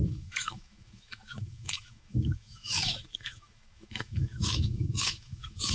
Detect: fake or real fake